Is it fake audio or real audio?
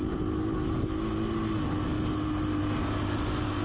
real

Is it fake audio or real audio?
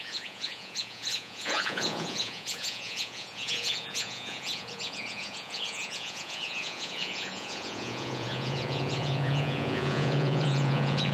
fake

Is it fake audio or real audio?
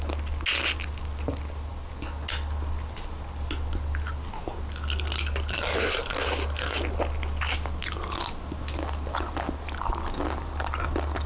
real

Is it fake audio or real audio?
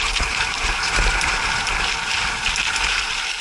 real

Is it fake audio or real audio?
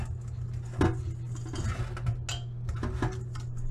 real